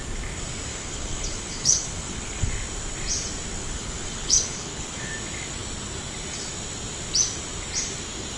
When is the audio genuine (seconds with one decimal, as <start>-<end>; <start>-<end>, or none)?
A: 0.0-0.7; 2.5-3.6; 5.1-8.4

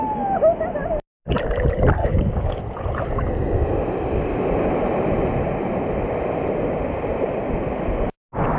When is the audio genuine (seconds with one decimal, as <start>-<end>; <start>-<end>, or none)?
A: 0.0-2.0; 2.6-8.6

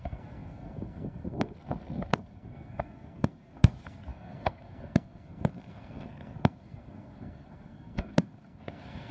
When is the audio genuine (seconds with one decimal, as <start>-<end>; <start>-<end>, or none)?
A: none

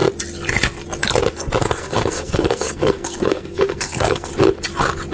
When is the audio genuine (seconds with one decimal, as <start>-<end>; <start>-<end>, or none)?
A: 0.0-1.6; 4.3-5.1